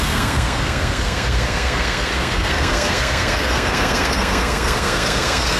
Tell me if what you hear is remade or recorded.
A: remade